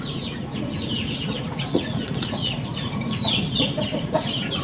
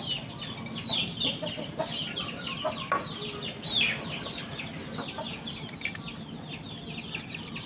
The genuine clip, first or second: second